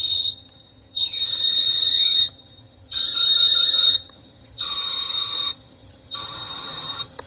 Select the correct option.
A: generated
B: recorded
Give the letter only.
A